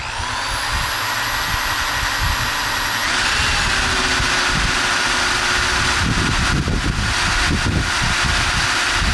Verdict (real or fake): real